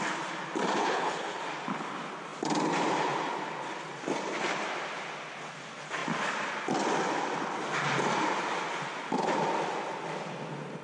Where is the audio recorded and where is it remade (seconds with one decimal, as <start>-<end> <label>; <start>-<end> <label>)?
0.0-0.8 recorded; 0.8-1.4 remade; 1.4-10.8 recorded